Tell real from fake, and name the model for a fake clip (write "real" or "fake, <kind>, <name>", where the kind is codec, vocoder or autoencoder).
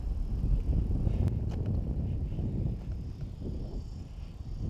real